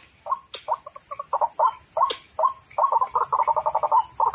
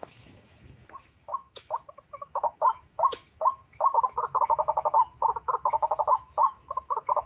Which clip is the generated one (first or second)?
second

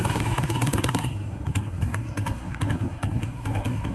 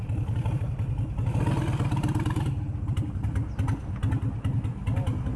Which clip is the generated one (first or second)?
first